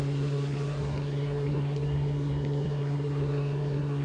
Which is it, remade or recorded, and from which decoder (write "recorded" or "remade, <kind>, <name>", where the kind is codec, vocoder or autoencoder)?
remade, codec, SNAC